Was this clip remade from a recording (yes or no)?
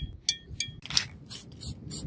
no